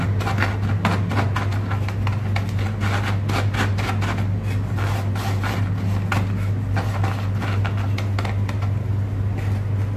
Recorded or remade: recorded